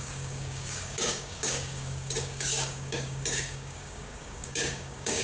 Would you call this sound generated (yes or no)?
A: yes